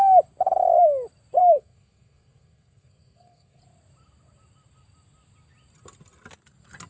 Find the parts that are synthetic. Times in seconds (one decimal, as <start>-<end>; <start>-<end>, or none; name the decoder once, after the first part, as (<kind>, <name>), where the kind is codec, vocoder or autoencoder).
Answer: 1.4-3.6 (codec, SNAC)